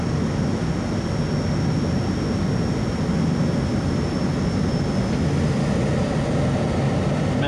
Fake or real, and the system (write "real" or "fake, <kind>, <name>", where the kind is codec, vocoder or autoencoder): real